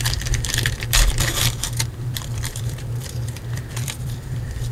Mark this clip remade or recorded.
remade